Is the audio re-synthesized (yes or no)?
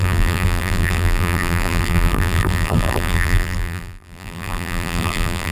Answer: yes